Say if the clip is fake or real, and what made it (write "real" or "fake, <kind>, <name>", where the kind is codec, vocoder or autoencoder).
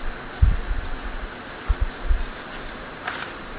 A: real